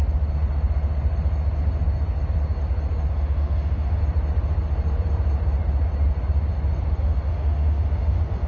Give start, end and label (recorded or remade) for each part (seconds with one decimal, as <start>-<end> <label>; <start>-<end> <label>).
0.0-3.1 recorded; 3.1-4.0 remade; 4.0-7.0 recorded; 7.0-8.5 remade